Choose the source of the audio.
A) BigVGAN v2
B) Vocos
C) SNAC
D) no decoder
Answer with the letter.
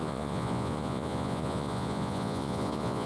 B